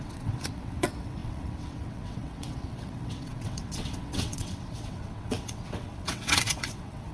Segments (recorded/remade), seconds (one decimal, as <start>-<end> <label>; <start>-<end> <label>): 0.0-7.1 remade